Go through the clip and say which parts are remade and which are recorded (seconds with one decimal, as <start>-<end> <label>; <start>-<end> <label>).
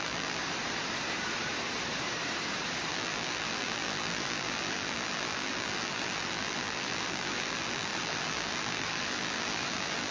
0.0-0.4 remade; 0.4-2.9 recorded; 2.9-10.1 remade